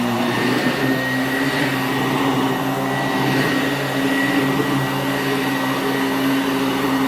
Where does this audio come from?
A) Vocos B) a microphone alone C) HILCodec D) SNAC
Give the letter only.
B